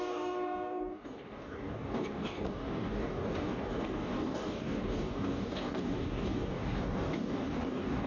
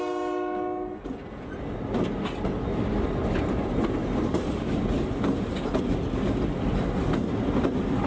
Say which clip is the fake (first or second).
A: first